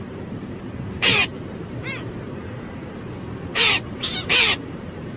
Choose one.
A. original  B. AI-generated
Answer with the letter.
B